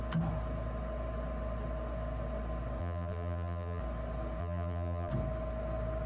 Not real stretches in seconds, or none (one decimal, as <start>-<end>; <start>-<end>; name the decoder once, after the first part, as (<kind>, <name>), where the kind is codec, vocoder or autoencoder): 2.8-3.8 (vocoder, BigVGAN v2); 4.4-5.1

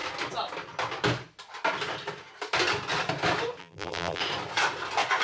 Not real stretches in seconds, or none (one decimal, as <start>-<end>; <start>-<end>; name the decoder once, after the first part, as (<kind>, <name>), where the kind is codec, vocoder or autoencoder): 3.6-4.2 (vocoder, BigVGAN v2)

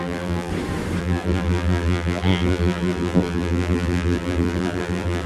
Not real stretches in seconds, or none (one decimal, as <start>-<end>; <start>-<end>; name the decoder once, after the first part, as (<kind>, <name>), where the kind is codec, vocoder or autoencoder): 0.0-0.5 (vocoder, BigVGAN v2); 1.0-5.3

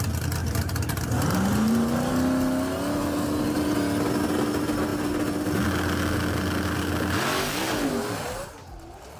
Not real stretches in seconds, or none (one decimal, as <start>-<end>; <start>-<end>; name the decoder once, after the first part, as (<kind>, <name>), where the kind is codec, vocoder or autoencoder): 0.4-2.1 (vocoder, BigVGAN v2)

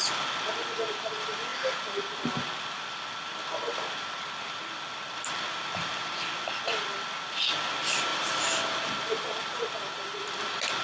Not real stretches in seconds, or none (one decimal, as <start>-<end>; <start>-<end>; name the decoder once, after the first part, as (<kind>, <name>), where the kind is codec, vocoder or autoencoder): 0.6-1.1 (vocoder, BigVGAN v2); 8.1-10.4